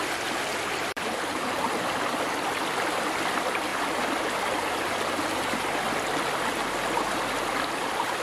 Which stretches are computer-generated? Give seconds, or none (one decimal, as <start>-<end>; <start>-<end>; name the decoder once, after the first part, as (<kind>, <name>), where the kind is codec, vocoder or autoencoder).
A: 0.5-1.7 (vocoder, BigVGAN v2)